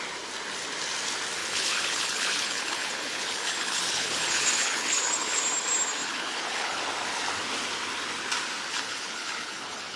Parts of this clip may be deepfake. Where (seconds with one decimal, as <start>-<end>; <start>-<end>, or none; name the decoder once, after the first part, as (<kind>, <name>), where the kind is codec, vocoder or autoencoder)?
1.4-5.4 (codec, HILCodec); 6.0-6.8; 8.7-10.0